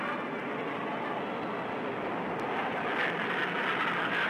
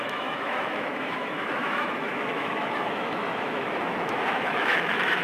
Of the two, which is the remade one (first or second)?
second